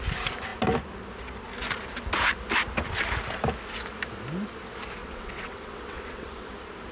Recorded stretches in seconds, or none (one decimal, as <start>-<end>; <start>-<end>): 0.0-5.0; 6.5-6.9